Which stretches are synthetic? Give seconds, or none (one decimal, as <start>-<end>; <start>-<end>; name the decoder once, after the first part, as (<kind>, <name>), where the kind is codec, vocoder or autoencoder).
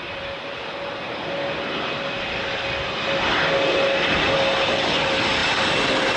none